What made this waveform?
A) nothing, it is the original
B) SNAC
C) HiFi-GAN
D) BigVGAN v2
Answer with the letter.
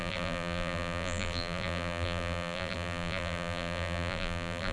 D